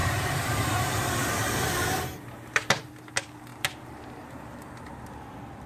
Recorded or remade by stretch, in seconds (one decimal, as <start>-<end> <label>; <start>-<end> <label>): 0.0-2.9 remade; 2.9-3.5 recorded; 3.5-4.9 remade; 4.9-5.7 recorded